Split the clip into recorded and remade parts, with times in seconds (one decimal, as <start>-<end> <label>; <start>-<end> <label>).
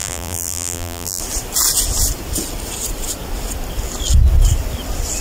0.0-1.2 remade; 1.2-5.2 recorded